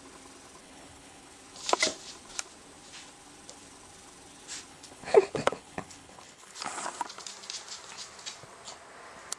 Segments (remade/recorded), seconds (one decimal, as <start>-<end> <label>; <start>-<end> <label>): 0.0-0.6 recorded; 0.6-1.3 remade; 1.3-4.7 recorded; 4.7-6.8 remade; 6.8-9.4 recorded